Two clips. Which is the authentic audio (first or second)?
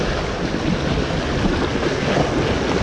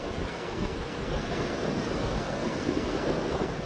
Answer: first